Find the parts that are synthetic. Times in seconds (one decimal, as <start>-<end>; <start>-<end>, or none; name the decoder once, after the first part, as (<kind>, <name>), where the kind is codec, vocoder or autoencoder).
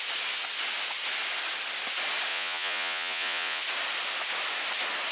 2.3-3.6 (vocoder, Vocos)